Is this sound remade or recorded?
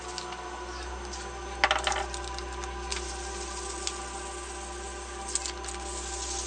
recorded